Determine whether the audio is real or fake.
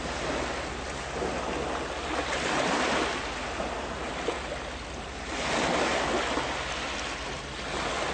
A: real